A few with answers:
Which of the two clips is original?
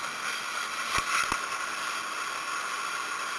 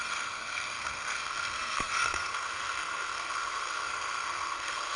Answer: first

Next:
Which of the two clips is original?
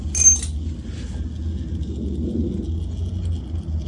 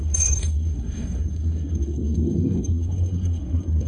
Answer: first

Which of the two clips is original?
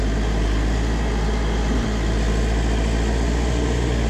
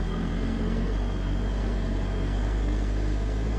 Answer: first